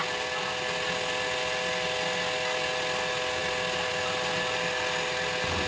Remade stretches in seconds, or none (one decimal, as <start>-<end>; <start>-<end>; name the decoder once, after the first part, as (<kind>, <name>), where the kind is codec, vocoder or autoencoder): none